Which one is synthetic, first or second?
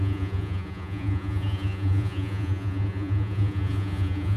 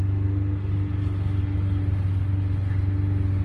first